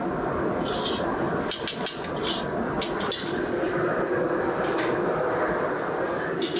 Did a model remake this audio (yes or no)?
no